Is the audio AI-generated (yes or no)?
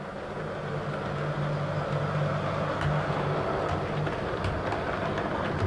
no